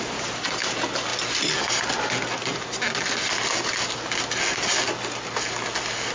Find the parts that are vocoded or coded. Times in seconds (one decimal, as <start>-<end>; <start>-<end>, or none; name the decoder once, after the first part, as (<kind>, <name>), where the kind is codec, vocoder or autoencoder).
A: none